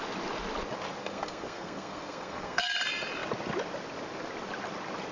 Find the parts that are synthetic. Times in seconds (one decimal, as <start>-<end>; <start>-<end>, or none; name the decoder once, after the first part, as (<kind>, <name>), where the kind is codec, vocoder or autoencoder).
1.0-2.6 (codec, SNAC)